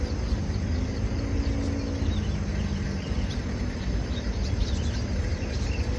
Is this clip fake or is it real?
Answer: real